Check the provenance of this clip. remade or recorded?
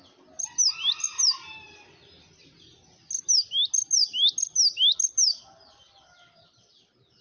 recorded